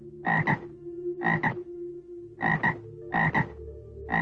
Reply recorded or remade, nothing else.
recorded